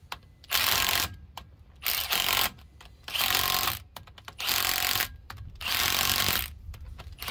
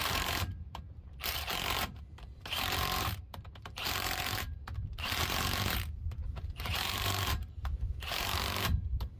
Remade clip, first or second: second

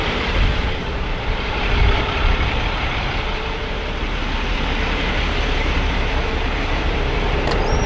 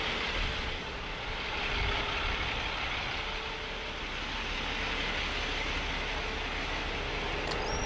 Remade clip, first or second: first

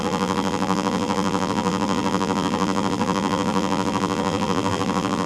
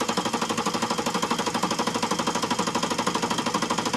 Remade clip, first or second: first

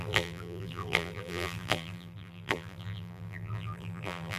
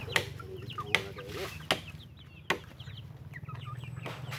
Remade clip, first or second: first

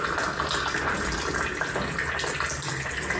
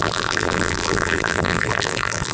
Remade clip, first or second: second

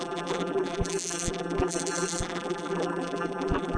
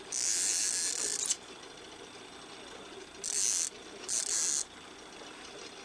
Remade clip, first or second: first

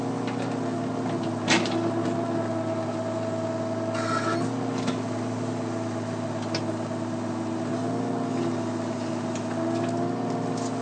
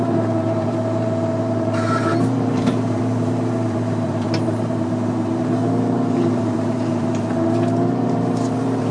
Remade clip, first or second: second